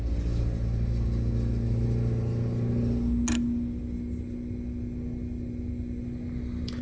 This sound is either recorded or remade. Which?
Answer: recorded